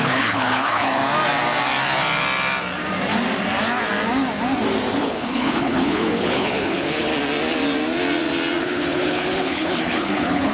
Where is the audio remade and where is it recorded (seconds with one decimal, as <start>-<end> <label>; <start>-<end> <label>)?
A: 0.0-1.0 remade; 1.0-4.9 recorded; 4.9-7.1 remade; 7.1-8.6 recorded; 8.6-10.5 remade